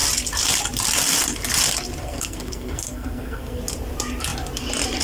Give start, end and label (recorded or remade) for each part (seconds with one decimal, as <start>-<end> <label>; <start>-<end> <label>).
0.0-2.0 recorded; 2.0-3.6 remade; 3.6-5.0 recorded